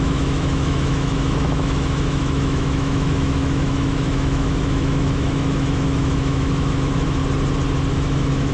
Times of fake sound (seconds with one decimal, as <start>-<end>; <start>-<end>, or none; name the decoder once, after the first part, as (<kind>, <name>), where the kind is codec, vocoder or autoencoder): 0.0-7.2 (autoencoder, DAC-VAE); 7.9-8.5